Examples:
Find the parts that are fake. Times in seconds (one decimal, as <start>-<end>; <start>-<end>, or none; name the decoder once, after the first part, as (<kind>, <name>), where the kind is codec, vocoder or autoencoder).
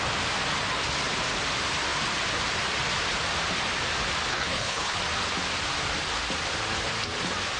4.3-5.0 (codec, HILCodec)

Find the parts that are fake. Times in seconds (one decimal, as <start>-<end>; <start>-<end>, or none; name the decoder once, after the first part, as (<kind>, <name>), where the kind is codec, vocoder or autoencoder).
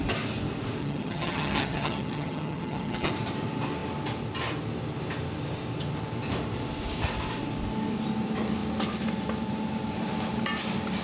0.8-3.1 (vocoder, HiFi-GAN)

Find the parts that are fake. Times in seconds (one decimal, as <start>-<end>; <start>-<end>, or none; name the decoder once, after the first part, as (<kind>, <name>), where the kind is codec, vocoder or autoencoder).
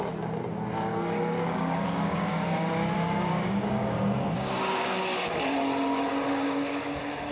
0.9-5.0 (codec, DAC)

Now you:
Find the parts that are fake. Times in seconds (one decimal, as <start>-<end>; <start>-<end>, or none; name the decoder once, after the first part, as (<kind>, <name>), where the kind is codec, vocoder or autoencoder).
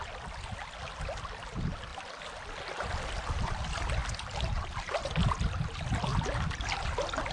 none